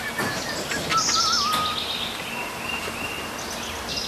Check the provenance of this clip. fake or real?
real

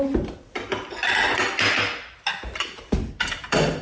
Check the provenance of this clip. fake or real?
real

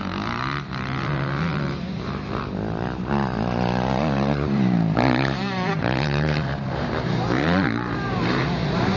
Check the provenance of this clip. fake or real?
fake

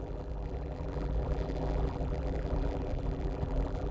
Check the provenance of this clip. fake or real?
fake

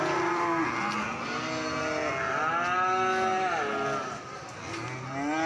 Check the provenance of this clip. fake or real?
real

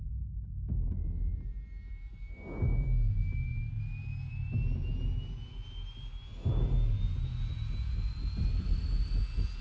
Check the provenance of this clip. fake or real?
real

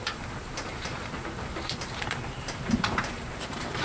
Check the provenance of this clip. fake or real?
fake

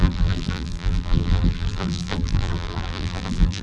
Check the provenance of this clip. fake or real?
fake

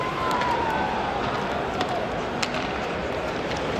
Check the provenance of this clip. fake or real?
fake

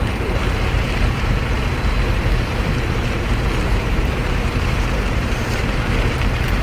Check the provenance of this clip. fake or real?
fake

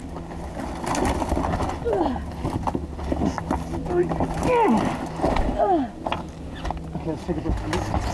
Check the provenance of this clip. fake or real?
real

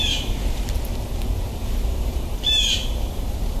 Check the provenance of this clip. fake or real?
fake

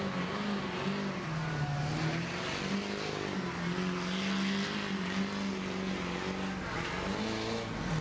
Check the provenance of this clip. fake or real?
real